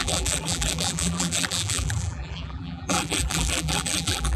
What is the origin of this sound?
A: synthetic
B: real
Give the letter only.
A